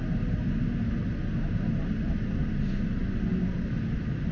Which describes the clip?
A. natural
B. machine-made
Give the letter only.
A